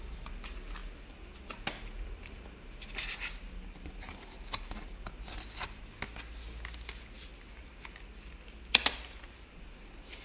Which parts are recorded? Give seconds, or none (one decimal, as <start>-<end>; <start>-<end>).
0.0-10.2